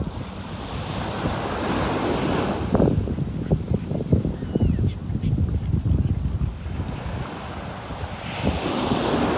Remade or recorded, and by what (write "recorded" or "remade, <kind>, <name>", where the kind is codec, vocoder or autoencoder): recorded